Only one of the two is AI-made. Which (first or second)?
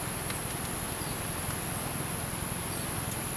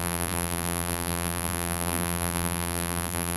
second